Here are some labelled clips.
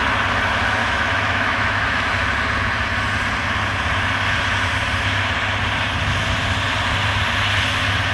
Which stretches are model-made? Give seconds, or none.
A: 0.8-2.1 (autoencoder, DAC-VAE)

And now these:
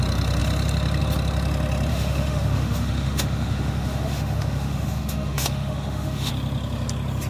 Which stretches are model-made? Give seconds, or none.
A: 1.9-6.3 (autoencoder, DAC-VAE)